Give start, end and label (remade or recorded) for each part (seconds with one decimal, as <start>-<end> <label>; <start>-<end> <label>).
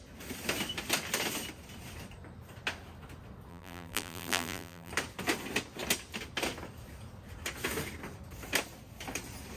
0.0-3.5 recorded; 3.5-4.9 remade; 4.9-9.6 recorded